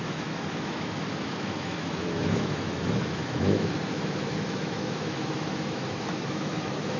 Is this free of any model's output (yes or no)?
no